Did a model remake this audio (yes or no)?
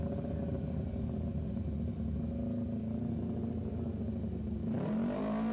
no